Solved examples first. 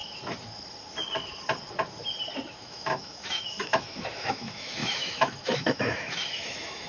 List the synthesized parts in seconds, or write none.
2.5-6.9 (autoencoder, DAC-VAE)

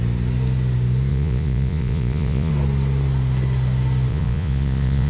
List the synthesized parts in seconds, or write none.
1.1-2.5 (vocoder, Vocos); 4.1-5.1

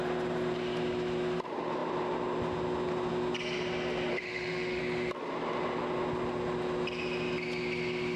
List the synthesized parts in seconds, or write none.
4.1-4.8 (autoencoder, DAC-VAE)

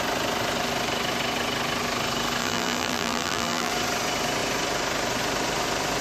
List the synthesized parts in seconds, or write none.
2.4-3.7 (vocoder, BigVGAN v2)

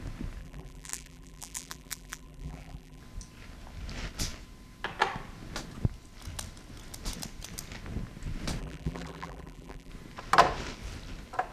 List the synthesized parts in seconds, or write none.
0.4-3.0 (vocoder, BigVGAN v2); 8.6-9.9

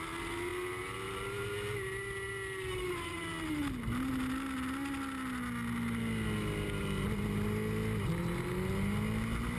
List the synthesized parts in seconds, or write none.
none